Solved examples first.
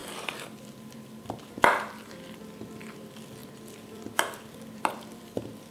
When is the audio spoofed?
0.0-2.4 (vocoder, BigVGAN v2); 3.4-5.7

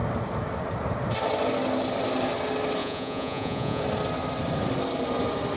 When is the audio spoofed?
2.8-3.8 (vocoder, Vocos)